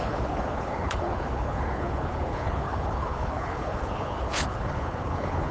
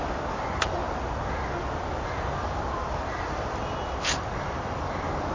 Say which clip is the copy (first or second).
first